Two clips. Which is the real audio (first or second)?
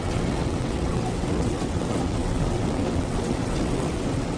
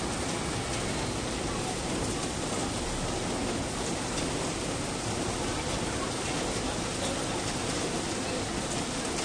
second